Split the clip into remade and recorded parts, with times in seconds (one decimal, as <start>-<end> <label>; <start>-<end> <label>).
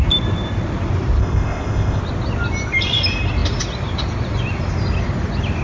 0.0-1.2 recorded; 1.2-2.0 remade; 2.0-5.6 recorded